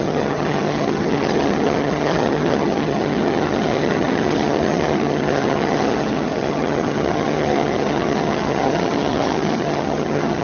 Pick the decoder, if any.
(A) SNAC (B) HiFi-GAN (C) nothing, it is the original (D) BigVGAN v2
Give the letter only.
B